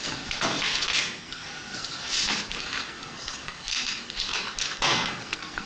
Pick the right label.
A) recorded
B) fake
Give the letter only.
B